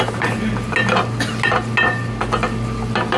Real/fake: real